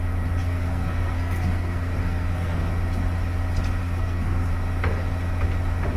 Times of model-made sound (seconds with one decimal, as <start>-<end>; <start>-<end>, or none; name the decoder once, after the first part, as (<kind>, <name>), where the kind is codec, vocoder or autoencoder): 0.4-2.6 (codec, SNAC); 3.8-4.5